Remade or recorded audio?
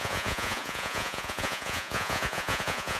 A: remade